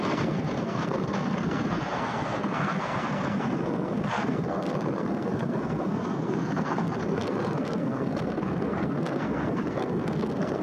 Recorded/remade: remade